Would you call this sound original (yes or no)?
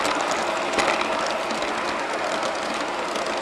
yes